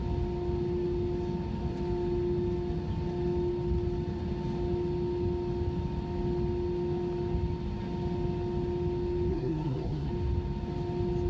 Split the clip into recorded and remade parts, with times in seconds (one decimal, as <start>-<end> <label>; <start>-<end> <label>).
0.0-9.3 recorded; 9.3-10.1 remade; 10.1-11.3 recorded